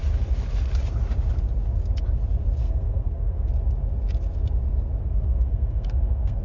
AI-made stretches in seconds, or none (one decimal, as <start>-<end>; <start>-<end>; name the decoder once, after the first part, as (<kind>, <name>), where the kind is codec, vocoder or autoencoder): 2.6-3.5 (codec, SNAC); 5.0-6.4